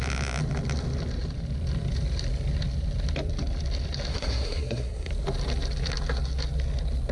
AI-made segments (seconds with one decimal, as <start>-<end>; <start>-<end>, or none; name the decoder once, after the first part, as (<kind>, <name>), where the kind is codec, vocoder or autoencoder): 4.1-5.1 (codec, SNAC)